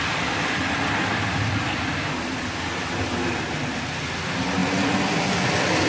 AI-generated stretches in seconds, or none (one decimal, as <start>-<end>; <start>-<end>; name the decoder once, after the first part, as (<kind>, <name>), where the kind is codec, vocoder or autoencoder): none